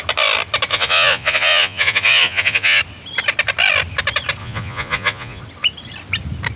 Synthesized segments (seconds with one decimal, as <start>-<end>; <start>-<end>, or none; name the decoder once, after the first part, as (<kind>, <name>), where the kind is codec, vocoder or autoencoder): 0.7-2.8 (vocoder, Vocos); 4.4-5.4